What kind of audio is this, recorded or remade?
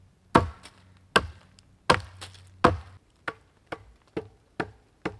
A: recorded